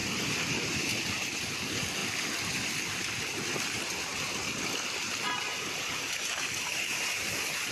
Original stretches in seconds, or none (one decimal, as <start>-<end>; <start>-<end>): 0.0-2.0; 3.0-4.1; 6.3-7.7